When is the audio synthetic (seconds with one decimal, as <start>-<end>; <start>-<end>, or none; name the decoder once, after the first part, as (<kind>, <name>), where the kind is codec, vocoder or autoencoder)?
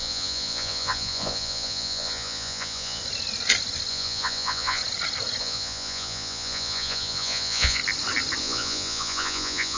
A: 0.0-3.0 (vocoder, Vocos); 3.9-4.8; 5.4-7.8; 8.4-9.8